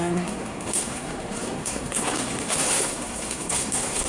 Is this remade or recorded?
remade